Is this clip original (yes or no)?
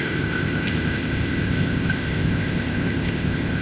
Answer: no